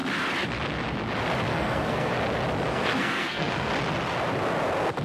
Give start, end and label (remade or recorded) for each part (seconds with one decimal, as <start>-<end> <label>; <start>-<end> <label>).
0.0-1.5 recorded; 1.5-2.1 remade; 2.1-2.7 recorded; 2.7-3.7 remade; 3.7-5.0 recorded